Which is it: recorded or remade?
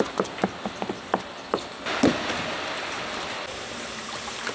recorded